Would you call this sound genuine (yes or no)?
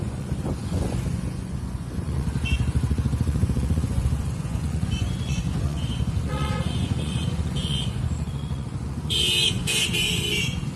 no